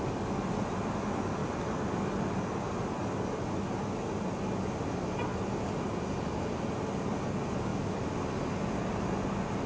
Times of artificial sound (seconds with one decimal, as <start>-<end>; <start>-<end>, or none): none